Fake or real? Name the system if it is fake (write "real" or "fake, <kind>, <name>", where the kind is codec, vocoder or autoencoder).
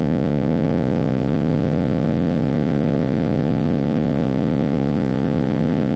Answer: fake, vocoder, Vocos